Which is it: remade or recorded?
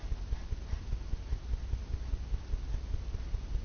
recorded